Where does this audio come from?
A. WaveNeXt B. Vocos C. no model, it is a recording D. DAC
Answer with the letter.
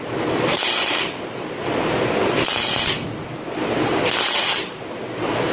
C